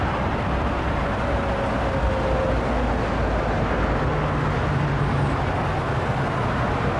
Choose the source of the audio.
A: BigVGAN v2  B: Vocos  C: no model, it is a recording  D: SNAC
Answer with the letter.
C